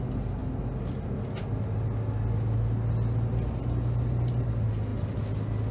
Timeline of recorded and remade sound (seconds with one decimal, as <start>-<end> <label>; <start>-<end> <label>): 0.0-5.7 recorded